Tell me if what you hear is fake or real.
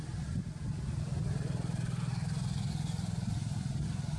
real